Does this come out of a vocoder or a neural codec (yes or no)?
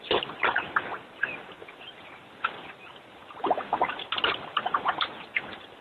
no